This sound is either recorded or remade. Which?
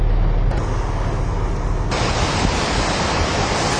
recorded